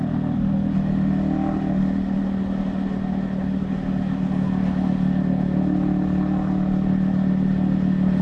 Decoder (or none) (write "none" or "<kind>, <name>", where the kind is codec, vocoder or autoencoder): none